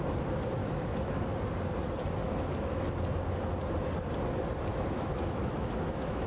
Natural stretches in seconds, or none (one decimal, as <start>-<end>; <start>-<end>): 0.0-0.6; 1.4-2.2; 2.8-4.7